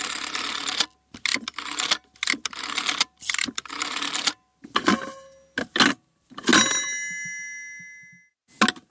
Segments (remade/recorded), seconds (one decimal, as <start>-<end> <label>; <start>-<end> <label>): 0.0-8.9 recorded